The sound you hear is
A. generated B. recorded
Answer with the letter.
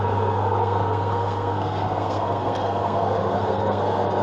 A